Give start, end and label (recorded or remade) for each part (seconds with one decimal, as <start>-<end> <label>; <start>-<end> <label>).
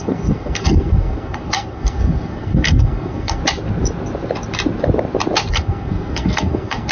0.0-3.4 remade; 3.4-5.5 recorded; 5.5-6.9 remade